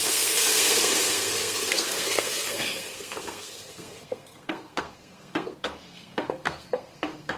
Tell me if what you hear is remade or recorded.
remade